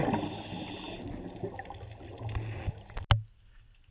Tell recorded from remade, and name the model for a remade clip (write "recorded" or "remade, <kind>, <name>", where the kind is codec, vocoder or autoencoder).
recorded